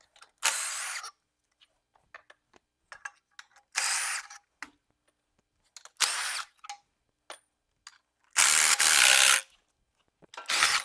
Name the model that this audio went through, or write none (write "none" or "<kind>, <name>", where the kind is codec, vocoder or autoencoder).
none